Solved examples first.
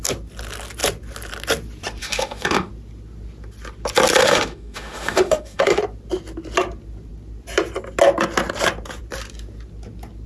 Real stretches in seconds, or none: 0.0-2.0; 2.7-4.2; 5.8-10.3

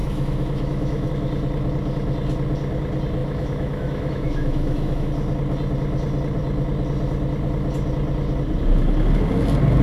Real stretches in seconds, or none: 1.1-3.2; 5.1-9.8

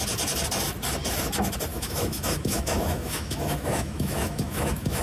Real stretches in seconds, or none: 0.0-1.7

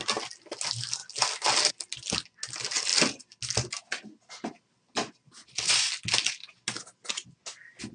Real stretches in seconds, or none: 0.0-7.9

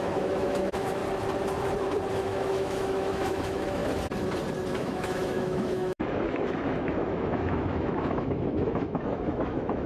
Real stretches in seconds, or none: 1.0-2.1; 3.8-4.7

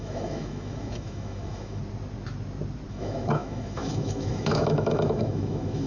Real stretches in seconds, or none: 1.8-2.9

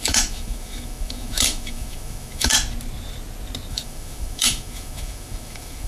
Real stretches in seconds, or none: 2.5-3.7